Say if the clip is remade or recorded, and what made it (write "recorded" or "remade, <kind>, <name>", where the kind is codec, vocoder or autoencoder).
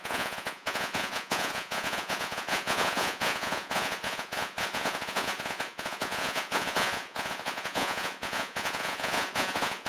remade, vocoder, Vocos